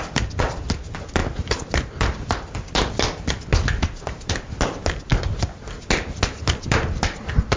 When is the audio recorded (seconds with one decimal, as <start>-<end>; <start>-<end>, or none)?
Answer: 0.0-7.6